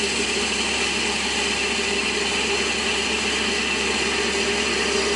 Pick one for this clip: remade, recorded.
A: recorded